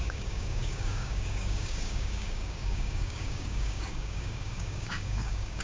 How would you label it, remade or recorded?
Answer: remade